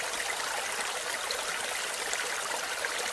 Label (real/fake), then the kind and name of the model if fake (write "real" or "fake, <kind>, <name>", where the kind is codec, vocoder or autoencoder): real